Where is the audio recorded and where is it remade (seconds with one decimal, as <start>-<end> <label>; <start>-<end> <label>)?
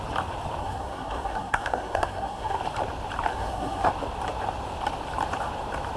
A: 0.0-0.6 recorded; 0.6-2.6 remade; 2.6-3.3 recorded; 3.3-3.9 remade; 3.9-6.0 recorded